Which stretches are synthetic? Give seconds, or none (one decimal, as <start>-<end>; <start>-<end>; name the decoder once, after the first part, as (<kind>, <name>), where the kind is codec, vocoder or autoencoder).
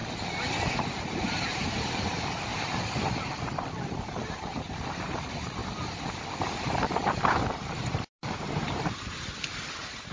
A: 0.7-2.5 (vocoder, BigVGAN v2); 3.4-5.6; 7.5-10.1